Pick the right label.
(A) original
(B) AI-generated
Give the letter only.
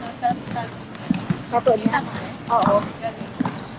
A